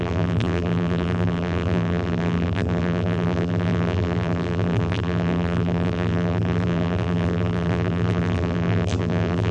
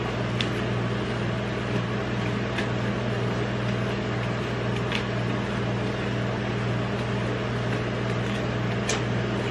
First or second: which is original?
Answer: second